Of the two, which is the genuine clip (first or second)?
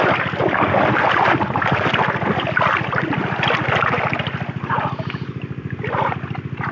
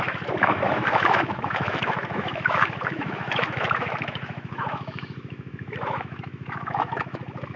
first